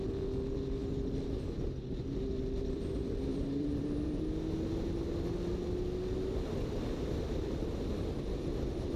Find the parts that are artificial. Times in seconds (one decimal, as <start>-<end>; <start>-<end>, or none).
3.3-4.2